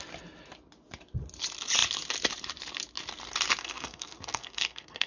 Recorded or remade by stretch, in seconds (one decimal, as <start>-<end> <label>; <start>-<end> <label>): 0.0-3.6 recorded; 3.6-5.1 remade